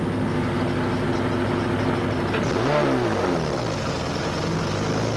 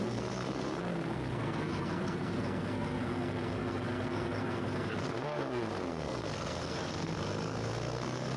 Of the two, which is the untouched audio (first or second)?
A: first